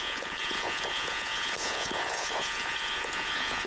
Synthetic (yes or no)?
yes